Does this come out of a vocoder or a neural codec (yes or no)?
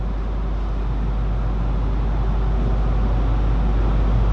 no